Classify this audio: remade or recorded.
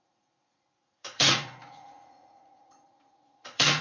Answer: remade